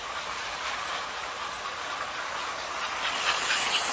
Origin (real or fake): real